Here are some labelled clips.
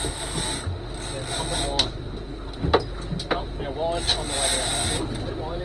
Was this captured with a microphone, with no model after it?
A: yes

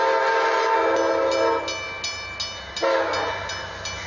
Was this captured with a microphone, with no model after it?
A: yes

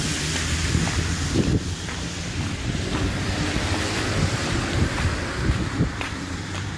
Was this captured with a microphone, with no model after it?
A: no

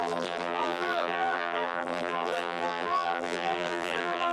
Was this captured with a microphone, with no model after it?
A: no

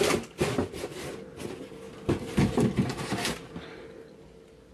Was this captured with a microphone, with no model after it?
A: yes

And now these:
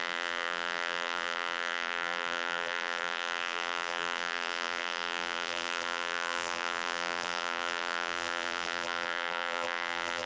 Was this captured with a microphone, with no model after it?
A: no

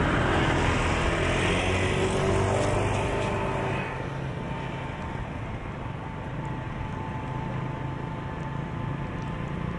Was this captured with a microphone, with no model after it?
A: yes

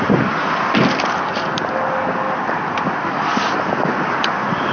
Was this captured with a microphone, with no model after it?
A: yes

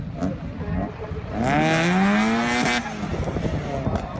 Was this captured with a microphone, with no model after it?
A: yes